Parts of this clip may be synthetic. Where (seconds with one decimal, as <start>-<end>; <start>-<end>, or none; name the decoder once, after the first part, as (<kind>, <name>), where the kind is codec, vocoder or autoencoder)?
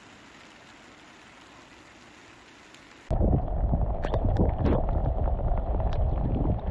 5.0-6.1 (vocoder, BigVGAN v2)